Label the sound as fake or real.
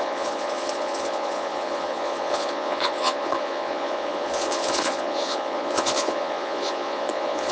fake